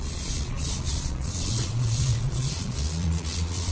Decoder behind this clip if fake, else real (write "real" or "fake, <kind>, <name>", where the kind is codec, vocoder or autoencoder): fake, vocoder, Vocos